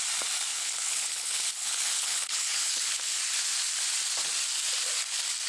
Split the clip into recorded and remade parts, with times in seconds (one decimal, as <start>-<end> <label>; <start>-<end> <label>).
0.0-0.5 recorded; 0.5-3.2 remade; 3.2-5.5 recorded

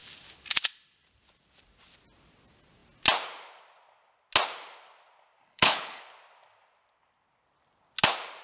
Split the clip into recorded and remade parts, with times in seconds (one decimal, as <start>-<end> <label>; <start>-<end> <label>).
0.0-5.4 recorded; 5.4-6.0 remade; 6.0-8.4 recorded

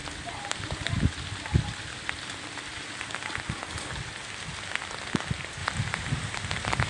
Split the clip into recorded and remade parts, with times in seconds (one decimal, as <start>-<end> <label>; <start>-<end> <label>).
0.0-6.9 recorded

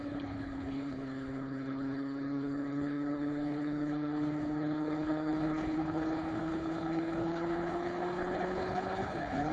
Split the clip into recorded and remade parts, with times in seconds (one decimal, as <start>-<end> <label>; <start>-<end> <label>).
0.0-9.5 remade

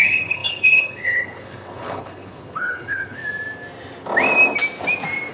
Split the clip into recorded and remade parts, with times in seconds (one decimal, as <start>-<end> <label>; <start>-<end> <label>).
0.0-3.2 remade; 3.2-5.3 recorded

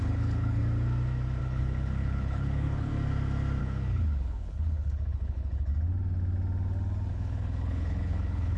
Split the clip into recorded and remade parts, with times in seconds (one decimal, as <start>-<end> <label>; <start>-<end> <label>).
0.0-0.6 remade; 0.6-1.4 recorded; 1.4-2.9 remade; 2.9-3.6 recorded; 3.6-5.7 remade; 5.7-7.1 recorded; 7.1-8.6 remade

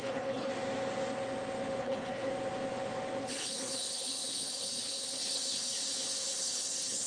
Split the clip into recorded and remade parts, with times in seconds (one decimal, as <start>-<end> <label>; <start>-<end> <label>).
0.0-0.5 remade; 0.5-1.8 recorded; 1.8-2.3 remade; 2.3-3.2 recorded; 3.2-7.1 remade